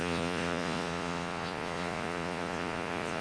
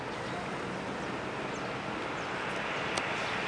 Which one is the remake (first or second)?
first